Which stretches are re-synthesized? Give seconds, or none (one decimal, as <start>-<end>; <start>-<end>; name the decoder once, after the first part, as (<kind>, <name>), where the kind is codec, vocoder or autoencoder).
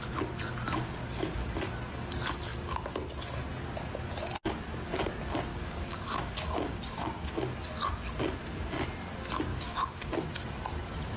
5.5-7.3 (codec, DAC); 9.5-10.1